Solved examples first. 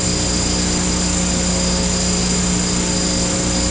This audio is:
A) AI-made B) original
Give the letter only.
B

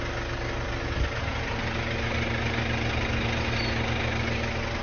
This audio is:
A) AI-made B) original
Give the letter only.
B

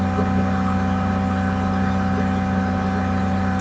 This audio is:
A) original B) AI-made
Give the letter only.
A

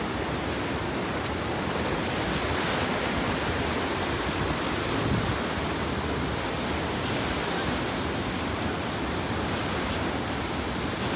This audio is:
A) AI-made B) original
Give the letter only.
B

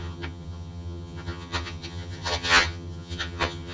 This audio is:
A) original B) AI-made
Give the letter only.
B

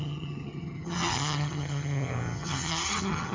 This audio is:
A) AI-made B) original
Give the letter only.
A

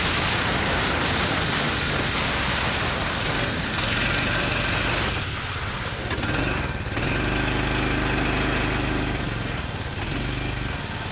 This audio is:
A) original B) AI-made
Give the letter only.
A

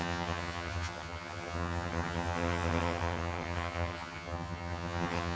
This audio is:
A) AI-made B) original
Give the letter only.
A